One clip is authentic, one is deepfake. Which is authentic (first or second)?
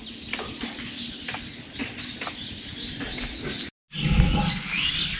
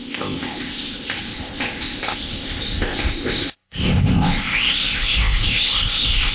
first